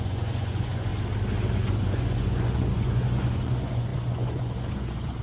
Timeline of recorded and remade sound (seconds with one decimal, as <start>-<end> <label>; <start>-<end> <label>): 0.0-0.9 remade; 0.9-1.5 recorded; 1.5-5.2 remade